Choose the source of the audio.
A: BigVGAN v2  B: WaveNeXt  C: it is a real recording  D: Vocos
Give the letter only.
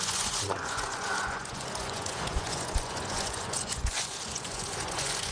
D